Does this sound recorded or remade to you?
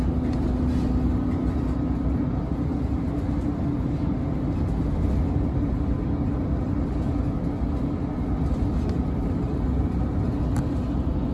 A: recorded